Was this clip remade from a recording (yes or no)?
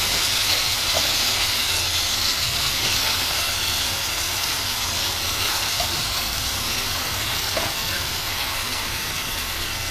yes